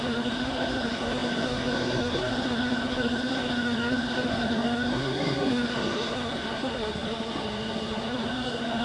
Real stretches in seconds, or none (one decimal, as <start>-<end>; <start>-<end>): none